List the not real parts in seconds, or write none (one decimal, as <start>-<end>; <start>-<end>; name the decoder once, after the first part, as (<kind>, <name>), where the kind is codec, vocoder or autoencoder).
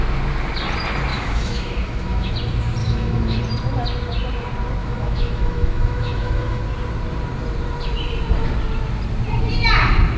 1.1-2.3 (autoencoder, DAC-VAE); 2.8-3.4; 4.8-6.6